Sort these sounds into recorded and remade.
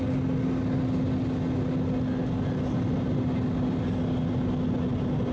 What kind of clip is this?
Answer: recorded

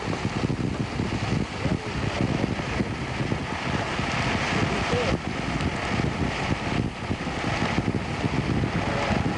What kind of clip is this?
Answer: recorded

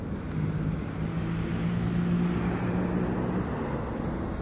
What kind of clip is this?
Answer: recorded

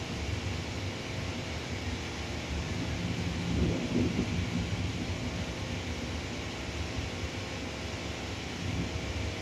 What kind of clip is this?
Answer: recorded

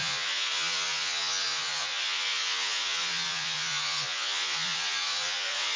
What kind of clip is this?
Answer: remade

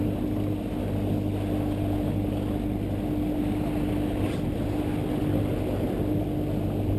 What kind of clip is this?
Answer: recorded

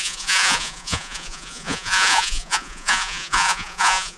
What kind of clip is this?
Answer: remade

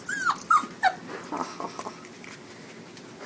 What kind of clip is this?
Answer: recorded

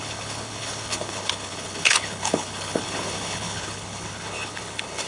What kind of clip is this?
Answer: remade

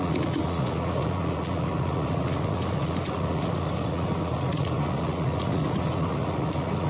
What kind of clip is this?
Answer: remade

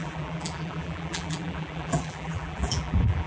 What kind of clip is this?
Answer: remade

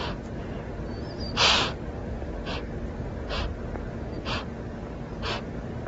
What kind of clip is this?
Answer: recorded